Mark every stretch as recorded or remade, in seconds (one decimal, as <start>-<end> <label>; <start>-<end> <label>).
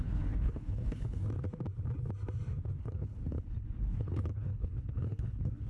0.0-1.2 remade; 1.2-2.8 recorded; 2.8-5.7 remade